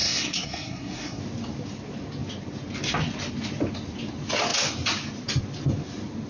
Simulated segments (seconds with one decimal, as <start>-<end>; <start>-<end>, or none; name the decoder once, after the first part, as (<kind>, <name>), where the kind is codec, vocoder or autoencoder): 0.0-1.2 (codec, SNAC)